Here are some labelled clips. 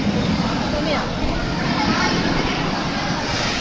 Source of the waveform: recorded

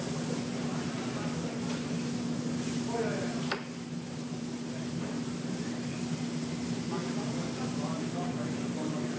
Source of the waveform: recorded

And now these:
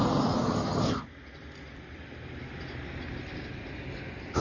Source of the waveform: recorded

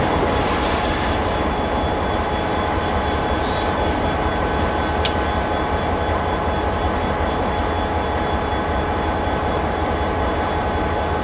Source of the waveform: recorded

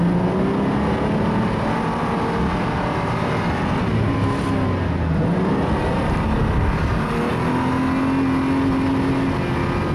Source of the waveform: recorded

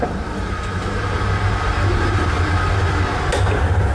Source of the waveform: recorded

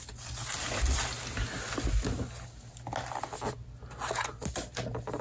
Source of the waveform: recorded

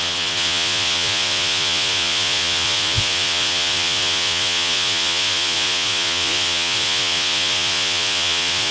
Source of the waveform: remade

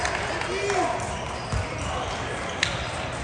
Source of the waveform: recorded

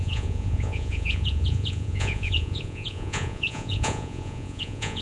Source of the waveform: remade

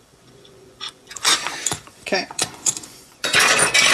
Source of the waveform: remade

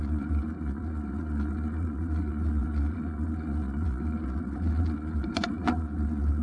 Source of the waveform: remade